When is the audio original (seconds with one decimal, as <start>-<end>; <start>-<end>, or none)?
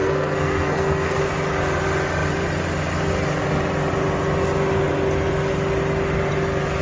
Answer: 1.2-6.8